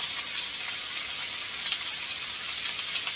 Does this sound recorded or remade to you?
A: recorded